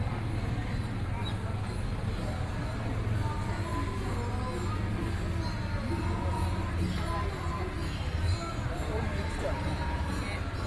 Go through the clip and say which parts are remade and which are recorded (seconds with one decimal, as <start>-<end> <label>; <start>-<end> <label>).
0.0-10.7 recorded